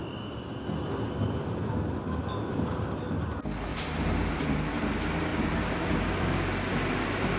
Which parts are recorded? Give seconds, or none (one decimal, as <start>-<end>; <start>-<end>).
0.0-3.7; 4.4-5.3; 6.0-7.4